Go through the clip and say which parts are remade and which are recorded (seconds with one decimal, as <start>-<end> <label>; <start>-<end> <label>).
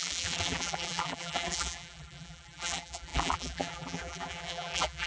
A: 0.0-5.1 remade